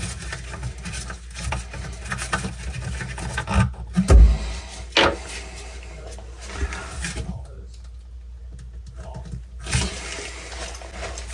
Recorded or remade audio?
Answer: recorded